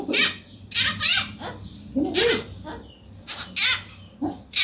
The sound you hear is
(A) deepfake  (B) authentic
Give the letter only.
B